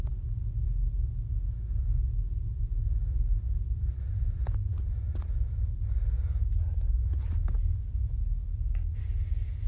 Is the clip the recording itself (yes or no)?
yes